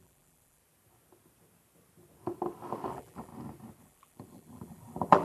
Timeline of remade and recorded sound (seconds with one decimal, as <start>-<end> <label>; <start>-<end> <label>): 0.0-0.6 remade; 0.6-2.9 recorded; 2.9-3.3 remade; 3.3-3.8 recorded; 3.8-5.2 remade